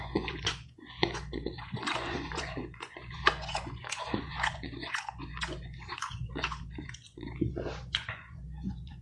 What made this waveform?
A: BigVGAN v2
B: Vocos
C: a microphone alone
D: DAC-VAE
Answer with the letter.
B